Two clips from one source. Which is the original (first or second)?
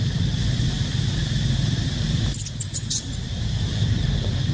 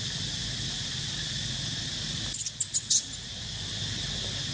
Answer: second